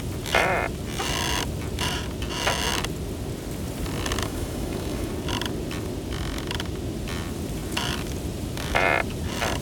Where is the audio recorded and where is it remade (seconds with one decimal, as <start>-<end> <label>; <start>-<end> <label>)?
0.0-4.2 recorded; 4.2-5.1 remade; 5.1-9.6 recorded